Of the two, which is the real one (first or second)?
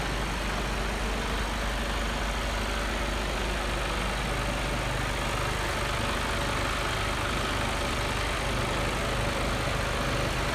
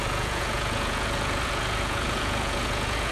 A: first